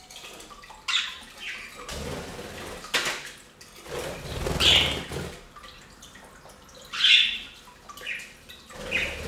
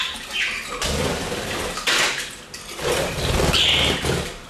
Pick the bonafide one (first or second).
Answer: first